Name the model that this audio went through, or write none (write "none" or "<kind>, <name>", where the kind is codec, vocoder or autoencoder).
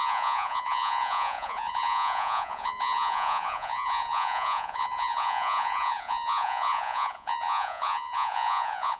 vocoder, Vocos